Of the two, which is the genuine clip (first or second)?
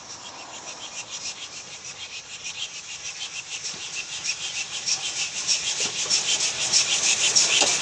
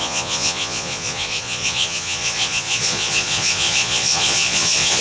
first